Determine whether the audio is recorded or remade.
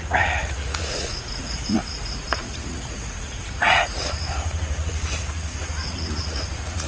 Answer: remade